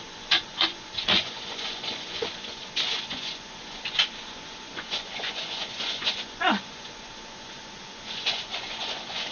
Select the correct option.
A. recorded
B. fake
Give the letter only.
B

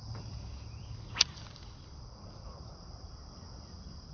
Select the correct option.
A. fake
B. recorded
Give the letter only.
A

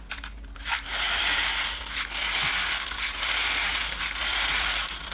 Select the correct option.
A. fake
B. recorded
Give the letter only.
B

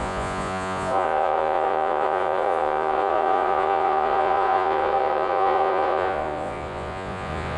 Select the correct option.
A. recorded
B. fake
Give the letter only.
B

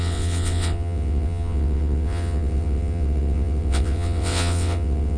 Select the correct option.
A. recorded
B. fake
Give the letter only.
B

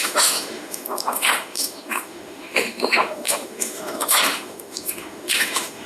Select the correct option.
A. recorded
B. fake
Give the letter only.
B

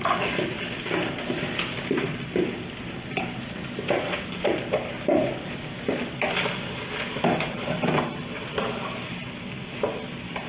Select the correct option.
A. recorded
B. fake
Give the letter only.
A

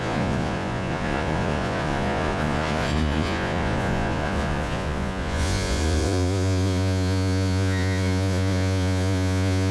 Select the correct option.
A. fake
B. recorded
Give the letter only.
A